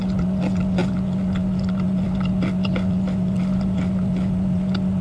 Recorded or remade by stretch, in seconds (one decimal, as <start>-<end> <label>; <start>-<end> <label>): 0.0-5.0 recorded